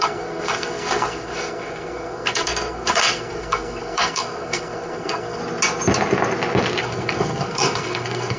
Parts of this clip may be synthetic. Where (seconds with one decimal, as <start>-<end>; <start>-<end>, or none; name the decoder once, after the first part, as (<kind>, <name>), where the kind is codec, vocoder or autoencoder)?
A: 0.0-5.4 (codec, SNAC); 6.8-8.4